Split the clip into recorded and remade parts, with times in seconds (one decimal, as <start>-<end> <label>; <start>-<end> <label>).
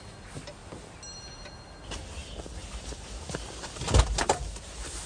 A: 0.0-5.1 recorded